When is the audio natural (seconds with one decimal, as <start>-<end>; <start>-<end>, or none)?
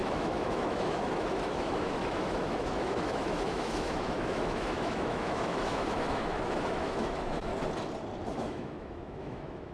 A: 7.5-8.3